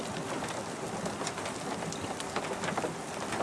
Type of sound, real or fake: real